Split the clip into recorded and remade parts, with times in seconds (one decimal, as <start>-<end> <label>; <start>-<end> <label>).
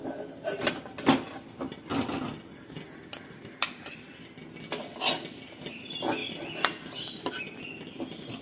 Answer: 0.0-8.4 recorded